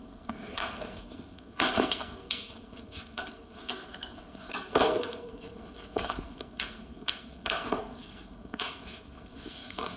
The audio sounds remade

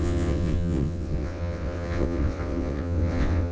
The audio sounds remade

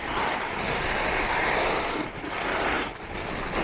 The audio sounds recorded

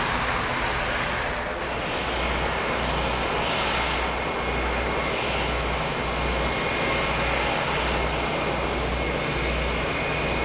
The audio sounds recorded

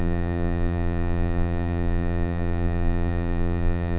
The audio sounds remade